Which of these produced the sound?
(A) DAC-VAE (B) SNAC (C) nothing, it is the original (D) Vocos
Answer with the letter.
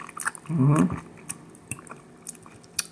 C